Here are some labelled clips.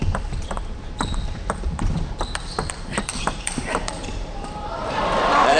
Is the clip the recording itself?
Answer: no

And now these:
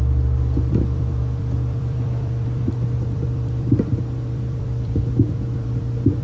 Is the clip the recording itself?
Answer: no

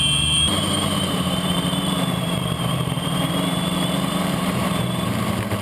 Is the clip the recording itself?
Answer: no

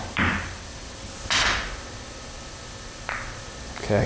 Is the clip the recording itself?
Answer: no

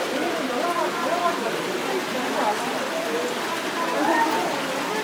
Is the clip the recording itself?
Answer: yes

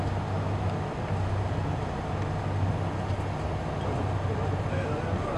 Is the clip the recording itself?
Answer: yes